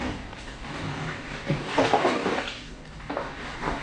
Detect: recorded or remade remade